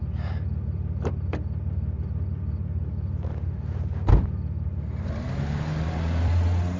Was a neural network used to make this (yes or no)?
no